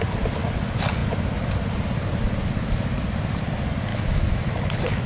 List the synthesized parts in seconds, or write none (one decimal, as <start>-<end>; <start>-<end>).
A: 3.9-4.5